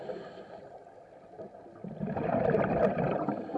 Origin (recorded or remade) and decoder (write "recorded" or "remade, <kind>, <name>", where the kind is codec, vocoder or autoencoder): recorded